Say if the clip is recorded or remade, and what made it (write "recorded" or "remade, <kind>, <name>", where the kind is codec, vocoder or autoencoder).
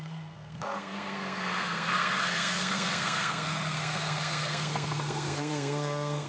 remade, codec, SNAC